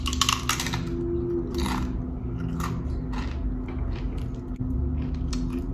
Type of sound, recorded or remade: recorded